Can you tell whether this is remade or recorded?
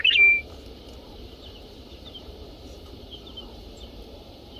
remade